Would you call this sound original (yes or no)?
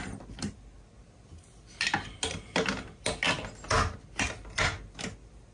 yes